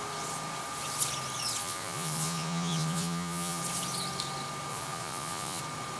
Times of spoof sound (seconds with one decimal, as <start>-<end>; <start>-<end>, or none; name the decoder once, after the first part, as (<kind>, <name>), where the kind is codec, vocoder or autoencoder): 1.6-3.6 (vocoder, Vocos); 4.7-5.6